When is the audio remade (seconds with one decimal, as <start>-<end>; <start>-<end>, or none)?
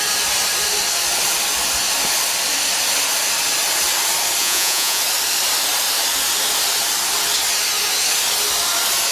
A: 4.4-5.0